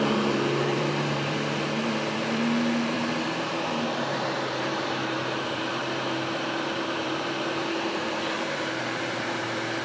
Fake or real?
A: fake